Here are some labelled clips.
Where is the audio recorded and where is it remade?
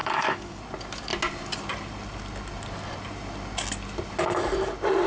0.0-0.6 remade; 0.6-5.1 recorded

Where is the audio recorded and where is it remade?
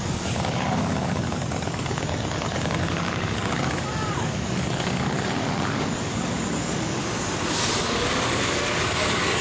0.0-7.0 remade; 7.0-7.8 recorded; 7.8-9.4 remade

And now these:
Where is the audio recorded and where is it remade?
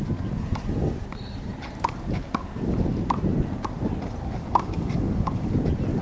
0.0-4.4 recorded; 4.4-5.5 remade; 5.5-6.0 recorded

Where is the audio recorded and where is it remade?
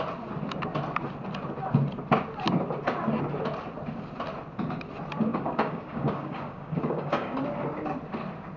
0.0-5.3 recorded; 5.3-7.4 remade; 7.4-8.6 recorded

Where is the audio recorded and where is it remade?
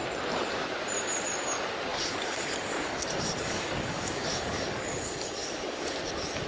0.0-1.9 recorded; 1.9-5.8 remade; 5.8-6.5 recorded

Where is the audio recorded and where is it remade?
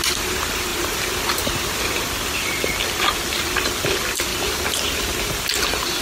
0.0-6.0 recorded